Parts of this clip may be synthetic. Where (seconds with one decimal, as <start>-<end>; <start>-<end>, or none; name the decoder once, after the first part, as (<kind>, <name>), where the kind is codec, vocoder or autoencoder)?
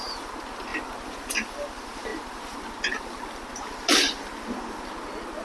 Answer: none